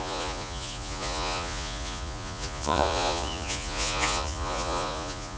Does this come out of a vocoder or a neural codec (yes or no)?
yes